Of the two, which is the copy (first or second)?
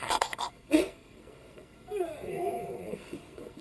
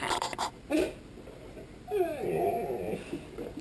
first